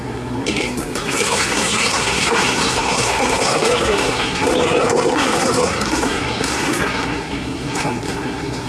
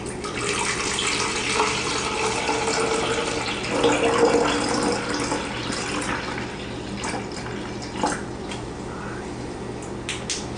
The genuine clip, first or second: second